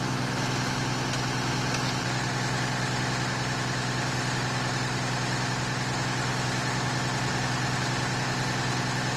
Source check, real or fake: real